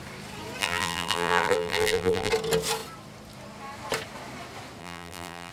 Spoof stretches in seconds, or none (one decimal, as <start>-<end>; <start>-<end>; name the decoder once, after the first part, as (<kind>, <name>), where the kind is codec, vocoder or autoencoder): 0.6-2.3 (vocoder, BigVGAN v2); 4.8-5.5